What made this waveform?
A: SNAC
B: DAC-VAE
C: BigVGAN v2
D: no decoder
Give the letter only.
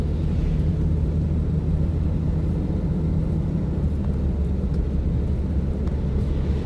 D